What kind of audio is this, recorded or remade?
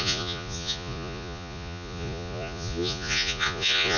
remade